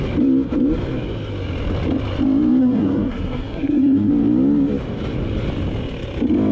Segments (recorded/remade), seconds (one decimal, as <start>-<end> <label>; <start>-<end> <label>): 0.0-2.6 recorded; 2.6-4.1 remade; 4.1-6.5 recorded